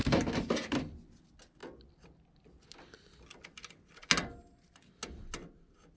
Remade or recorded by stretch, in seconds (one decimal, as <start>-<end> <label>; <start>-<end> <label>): 0.0-6.0 recorded